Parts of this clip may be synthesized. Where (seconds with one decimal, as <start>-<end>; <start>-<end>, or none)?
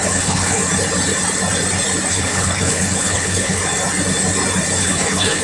0.0-0.6; 2.1-3.6; 4.8-5.4